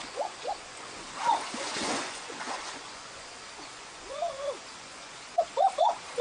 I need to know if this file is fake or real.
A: fake